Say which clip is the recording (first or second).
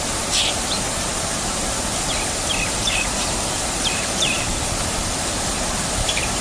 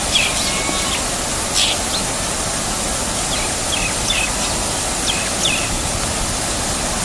second